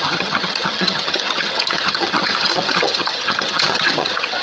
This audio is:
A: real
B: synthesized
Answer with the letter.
B